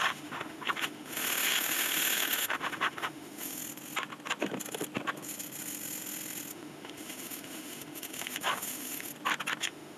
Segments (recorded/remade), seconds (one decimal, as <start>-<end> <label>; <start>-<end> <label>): 0.0-3.6 remade; 3.6-6.5 recorded; 6.5-9.1 remade; 9.1-9.6 recorded; 9.6-10.0 remade